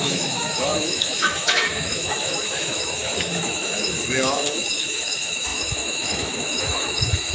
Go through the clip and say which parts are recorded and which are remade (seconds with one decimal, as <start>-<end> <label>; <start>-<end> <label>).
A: 0.0-7.3 remade